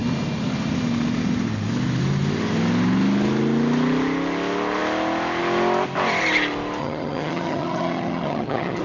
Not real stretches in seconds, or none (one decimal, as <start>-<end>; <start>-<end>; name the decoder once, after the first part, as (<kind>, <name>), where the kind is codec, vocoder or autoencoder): 6.8-8.8 (vocoder, HiFi-GAN)